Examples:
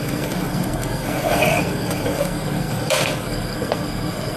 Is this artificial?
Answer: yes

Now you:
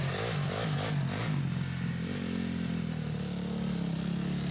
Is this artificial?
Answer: no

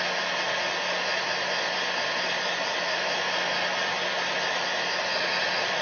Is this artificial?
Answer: no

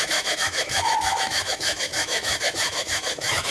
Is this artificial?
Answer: yes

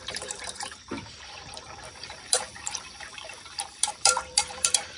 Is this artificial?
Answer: yes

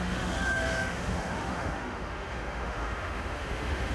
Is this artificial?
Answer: yes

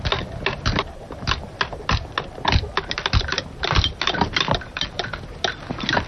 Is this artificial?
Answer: no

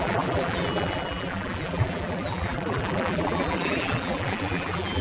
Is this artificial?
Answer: yes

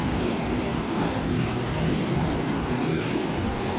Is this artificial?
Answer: yes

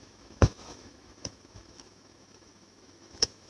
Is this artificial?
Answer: yes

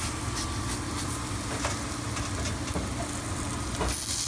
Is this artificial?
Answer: no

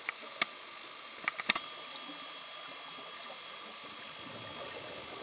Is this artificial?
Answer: no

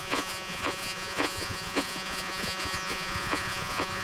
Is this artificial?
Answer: yes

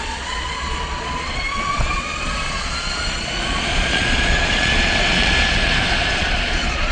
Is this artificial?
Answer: yes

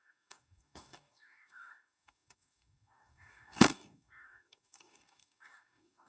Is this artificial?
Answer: yes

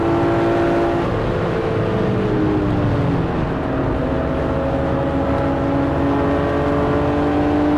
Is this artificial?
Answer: no